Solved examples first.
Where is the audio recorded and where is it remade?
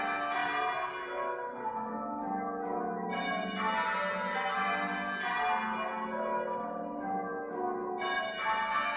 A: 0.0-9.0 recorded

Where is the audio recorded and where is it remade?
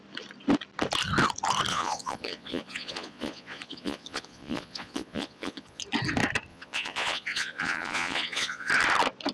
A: 0.0-1.7 recorded; 1.7-5.8 remade; 5.8-6.5 recorded; 6.5-8.7 remade; 8.7-9.3 recorded